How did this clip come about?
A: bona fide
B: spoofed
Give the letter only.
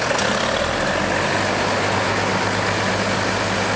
A